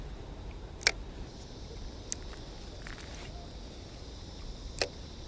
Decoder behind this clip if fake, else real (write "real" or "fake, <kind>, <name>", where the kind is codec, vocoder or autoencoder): real